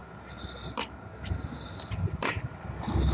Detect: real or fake real